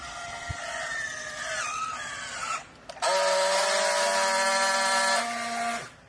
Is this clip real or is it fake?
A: real